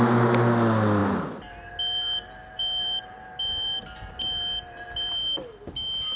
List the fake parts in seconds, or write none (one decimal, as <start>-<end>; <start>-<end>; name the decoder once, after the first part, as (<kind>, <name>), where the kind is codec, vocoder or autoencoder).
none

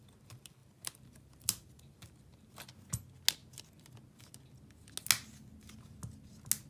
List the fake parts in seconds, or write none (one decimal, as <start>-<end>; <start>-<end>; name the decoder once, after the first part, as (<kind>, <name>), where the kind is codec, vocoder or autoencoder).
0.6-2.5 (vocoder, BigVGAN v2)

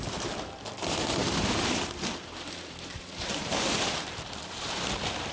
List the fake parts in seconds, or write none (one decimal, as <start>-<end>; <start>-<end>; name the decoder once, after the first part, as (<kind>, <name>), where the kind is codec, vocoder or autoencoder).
0.0-5.3 (vocoder, BigVGAN v2)